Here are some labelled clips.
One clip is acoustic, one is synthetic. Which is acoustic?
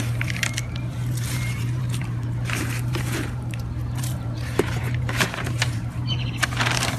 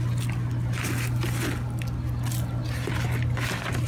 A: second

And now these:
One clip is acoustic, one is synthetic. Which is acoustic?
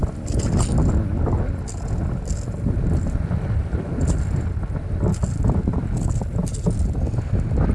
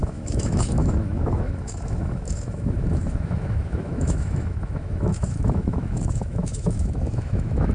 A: first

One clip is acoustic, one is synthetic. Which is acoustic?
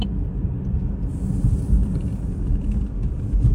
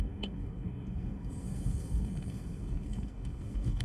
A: first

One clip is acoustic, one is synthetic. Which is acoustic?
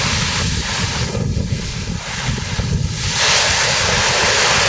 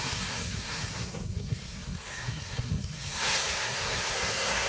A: first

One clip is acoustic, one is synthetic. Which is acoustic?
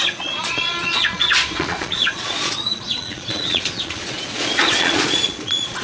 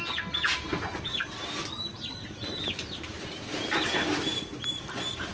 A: second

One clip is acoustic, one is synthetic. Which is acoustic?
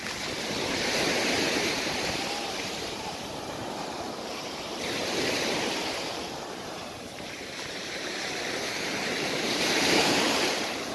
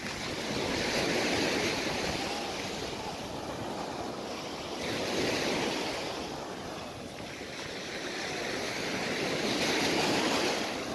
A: second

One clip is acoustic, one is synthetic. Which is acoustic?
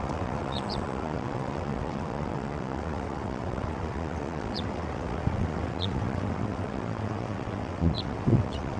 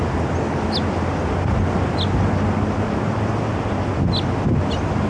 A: second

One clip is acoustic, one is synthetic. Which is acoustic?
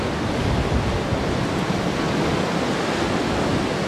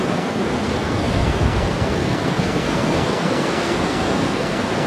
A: first